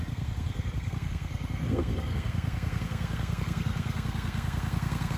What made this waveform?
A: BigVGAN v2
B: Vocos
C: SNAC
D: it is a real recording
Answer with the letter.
C